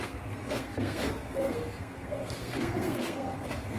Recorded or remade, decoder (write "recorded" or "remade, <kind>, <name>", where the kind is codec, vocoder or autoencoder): remade, codec, SNAC